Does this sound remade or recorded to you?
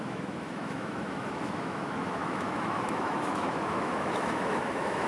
remade